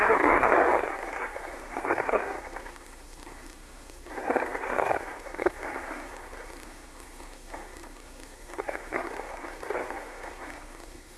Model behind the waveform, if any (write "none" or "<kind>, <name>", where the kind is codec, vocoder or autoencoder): codec, SNAC